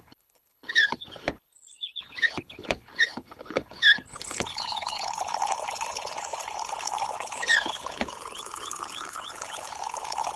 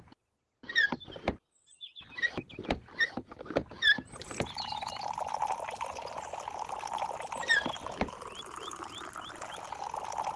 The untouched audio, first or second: second